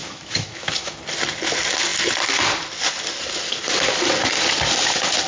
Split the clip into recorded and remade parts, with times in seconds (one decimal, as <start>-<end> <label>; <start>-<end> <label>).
0.0-1.0 remade; 1.0-5.3 recorded

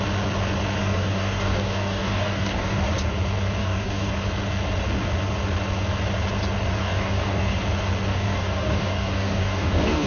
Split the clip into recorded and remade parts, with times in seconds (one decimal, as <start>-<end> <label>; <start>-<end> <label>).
0.0-0.8 recorded; 0.8-2.8 remade; 2.8-3.6 recorded; 3.6-4.1 remade; 4.1-6.8 recorded; 6.8-7.6 remade; 7.6-8.1 recorded; 8.1-10.1 remade